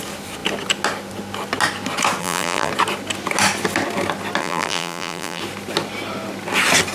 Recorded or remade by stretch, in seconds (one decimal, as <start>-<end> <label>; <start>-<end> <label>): 0.0-2.2 recorded; 2.2-2.7 remade; 2.7-4.4 recorded; 4.4-5.4 remade; 5.4-6.9 recorded